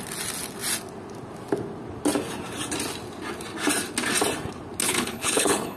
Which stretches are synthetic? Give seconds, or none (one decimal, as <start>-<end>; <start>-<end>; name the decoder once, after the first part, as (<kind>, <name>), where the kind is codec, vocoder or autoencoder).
4.8-5.8 (codec, HILCodec)

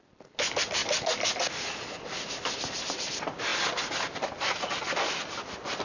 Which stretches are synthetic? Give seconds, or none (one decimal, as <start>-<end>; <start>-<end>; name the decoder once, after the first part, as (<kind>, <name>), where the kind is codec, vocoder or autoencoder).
none

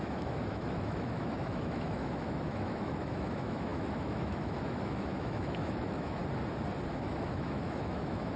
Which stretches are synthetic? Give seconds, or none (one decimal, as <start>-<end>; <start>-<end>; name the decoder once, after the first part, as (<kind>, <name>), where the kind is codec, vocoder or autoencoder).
0.0-6.2 (autoencoder, DAC-VAE); 6.9-8.4

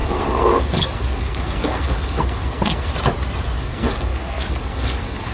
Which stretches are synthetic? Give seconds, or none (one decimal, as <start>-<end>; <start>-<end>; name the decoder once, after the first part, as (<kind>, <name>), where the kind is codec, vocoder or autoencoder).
0.0-2.9 (codec, SNAC); 3.6-5.3

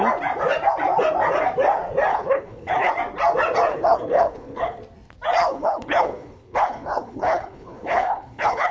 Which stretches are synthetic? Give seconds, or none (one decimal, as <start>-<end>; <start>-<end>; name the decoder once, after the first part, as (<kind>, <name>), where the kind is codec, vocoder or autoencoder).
2.1-2.9 (codec, HILCodec); 3.7-4.8; 5.4-8.7

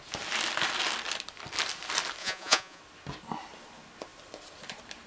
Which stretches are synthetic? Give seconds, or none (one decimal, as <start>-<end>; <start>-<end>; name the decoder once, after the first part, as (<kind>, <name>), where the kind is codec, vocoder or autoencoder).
2.2-2.8 (vocoder, Vocos)